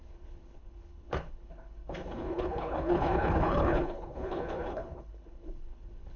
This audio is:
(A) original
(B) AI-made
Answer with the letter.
B